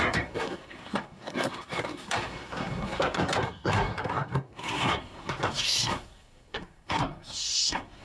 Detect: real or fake fake